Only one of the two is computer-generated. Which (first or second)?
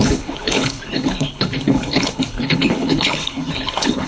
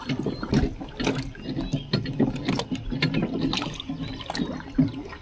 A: first